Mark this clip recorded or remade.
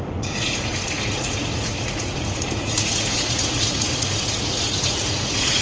remade